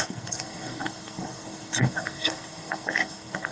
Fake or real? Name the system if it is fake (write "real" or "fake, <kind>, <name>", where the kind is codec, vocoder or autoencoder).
fake, codec, SNAC